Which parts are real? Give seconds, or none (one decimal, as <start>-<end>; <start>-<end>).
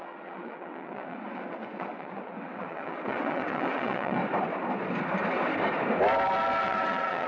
4.2-6.6